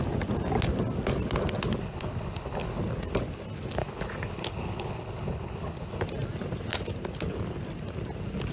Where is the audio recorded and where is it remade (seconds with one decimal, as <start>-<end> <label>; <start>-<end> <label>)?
0.0-1.8 recorded; 1.8-2.8 remade; 2.8-3.8 recorded; 3.8-6.0 remade; 6.0-8.5 recorded